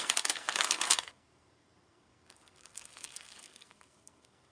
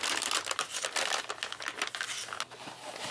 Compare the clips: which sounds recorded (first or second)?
second